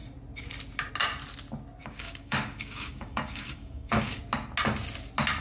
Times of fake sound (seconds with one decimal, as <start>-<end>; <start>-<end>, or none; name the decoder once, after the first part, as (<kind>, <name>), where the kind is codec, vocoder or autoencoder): 1.8-4.2 (codec, DAC)